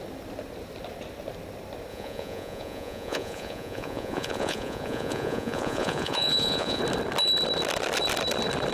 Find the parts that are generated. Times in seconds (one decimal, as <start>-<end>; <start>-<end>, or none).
1.9-6.8